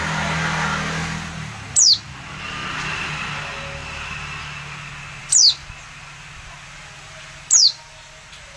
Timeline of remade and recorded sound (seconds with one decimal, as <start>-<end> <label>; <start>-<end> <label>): 0.0-8.6 recorded